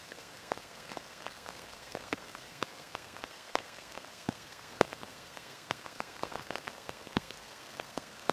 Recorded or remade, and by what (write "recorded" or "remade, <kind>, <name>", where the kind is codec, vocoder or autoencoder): remade, codec, SNAC